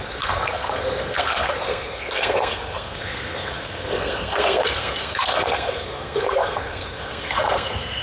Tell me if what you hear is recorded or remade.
remade